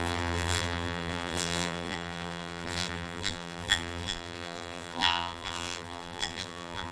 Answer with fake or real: fake